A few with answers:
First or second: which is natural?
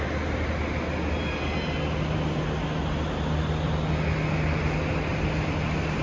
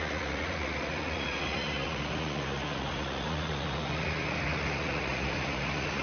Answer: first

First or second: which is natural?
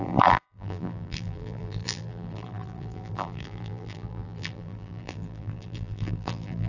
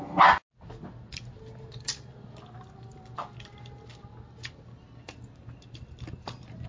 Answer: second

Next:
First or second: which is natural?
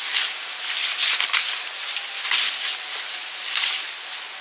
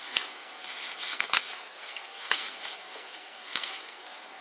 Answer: first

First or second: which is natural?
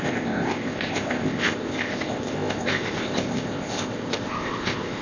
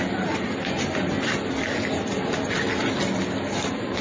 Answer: second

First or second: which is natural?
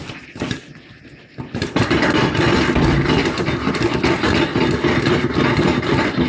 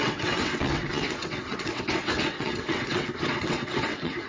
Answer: first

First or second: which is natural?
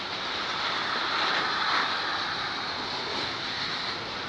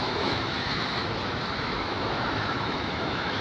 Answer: first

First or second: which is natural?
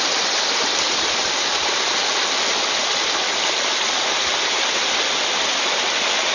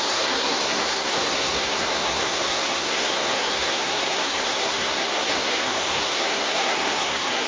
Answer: first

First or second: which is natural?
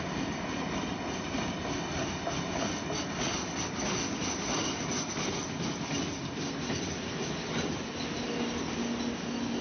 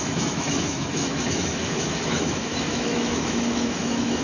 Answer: first